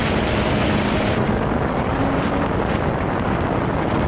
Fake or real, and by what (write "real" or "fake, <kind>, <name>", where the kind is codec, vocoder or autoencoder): real